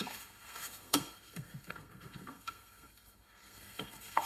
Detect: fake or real fake